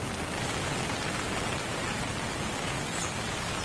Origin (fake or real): real